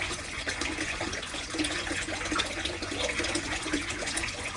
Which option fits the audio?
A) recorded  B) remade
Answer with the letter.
B